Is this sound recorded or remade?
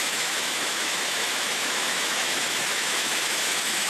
remade